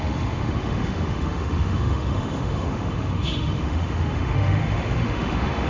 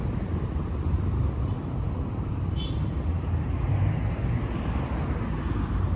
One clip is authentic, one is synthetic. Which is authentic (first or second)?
second